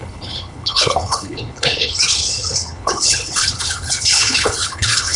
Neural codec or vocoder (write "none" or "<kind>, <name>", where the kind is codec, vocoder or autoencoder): codec, HILCodec